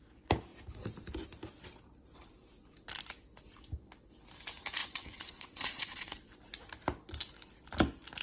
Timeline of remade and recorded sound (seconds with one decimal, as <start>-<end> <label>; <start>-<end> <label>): 0.0-4.8 recorded; 4.8-6.3 remade; 6.3-8.2 recorded